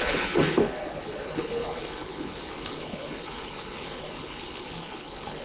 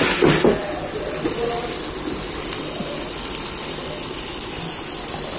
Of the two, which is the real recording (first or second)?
second